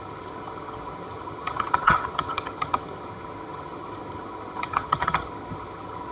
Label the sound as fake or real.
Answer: fake